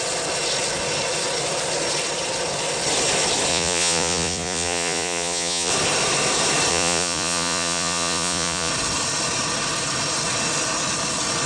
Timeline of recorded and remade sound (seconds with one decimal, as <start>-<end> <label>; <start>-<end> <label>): 0.0-3.5 recorded; 3.5-5.7 remade; 5.7-6.7 recorded; 6.7-8.7 remade; 8.7-11.5 recorded